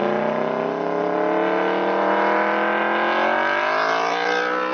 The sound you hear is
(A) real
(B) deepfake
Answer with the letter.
A